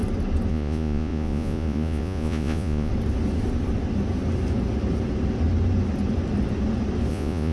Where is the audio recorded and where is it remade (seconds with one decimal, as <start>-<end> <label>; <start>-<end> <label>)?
0.0-0.5 recorded; 0.5-2.9 remade; 2.9-7.1 recorded; 7.1-7.5 remade